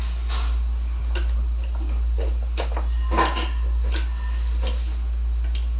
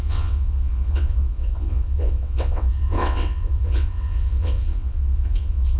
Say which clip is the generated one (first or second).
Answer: second